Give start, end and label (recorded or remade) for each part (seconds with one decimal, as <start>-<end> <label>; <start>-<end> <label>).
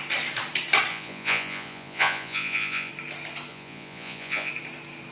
0.0-0.9 recorded; 0.9-2.9 remade; 2.9-3.5 recorded; 3.5-4.5 remade; 4.5-5.1 recorded